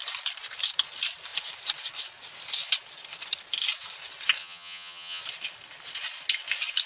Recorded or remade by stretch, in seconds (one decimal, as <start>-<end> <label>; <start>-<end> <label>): 0.0-4.4 recorded; 4.4-5.2 remade; 5.2-6.9 recorded